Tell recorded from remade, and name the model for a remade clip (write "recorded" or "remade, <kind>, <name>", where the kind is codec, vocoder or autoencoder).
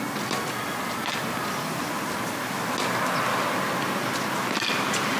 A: recorded